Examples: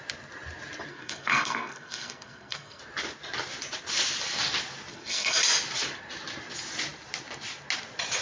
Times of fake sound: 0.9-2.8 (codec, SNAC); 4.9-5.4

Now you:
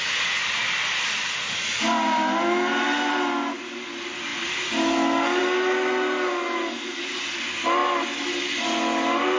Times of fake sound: none